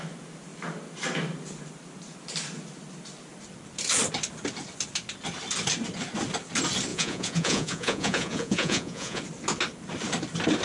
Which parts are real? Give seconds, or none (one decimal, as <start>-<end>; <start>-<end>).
0.0-6.9; 9.2-10.6